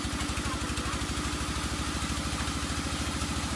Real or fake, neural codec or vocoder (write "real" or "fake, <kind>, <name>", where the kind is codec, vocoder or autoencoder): real